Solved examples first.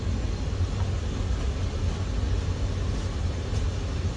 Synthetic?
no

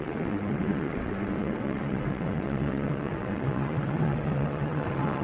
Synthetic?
yes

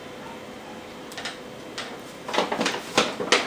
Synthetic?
no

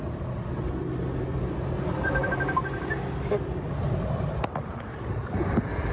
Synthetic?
no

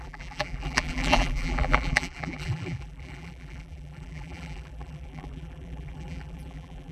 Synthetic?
yes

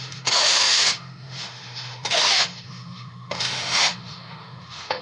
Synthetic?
yes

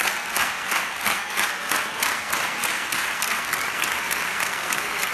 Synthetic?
yes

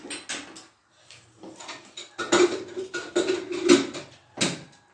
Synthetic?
no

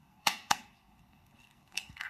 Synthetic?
yes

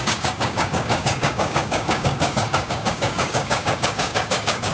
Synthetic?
yes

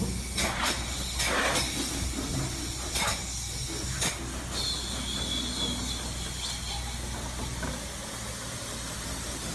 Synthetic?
no